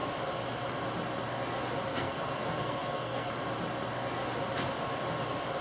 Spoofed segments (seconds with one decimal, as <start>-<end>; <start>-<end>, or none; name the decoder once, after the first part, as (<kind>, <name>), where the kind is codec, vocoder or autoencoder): 1.9-3.3 (codec, SNAC)